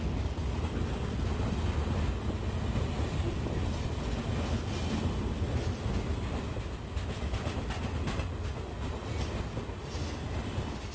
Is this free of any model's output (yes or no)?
yes